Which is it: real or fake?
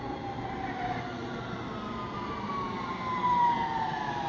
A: real